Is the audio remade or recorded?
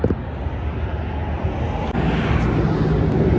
recorded